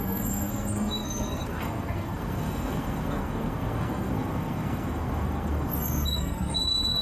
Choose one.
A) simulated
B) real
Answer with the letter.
A